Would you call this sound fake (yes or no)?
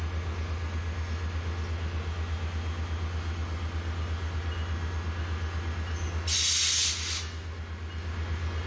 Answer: no